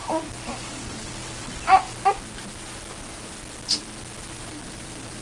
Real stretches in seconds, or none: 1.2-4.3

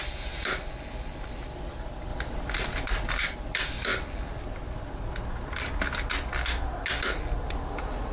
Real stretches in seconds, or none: 2.1-3.2; 3.9-7.4

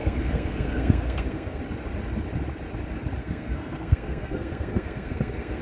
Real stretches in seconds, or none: 1.6-3.2

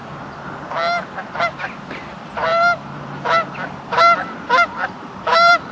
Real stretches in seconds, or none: 0.0-2.1